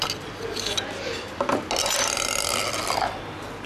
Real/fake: real